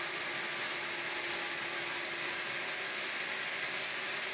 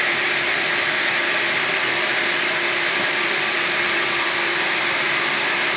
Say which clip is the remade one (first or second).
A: second